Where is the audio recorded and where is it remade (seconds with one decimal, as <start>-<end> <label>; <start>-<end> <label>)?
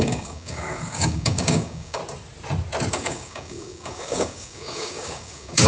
0.0-2.0 remade; 2.0-2.9 recorded; 2.9-5.7 remade